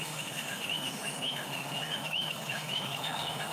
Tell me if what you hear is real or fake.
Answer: fake